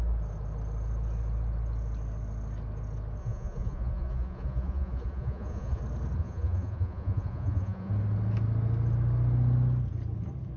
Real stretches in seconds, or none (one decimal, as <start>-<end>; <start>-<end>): 0.0-3.2; 5.8-6.2; 7.9-10.6